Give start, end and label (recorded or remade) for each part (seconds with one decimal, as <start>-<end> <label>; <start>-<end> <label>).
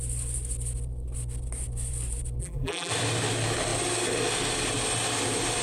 0.0-2.4 recorded; 2.4-2.9 remade; 2.9-5.6 recorded